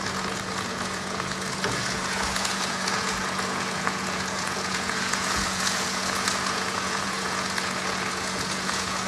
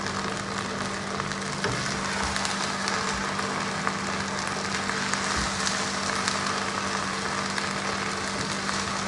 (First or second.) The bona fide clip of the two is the second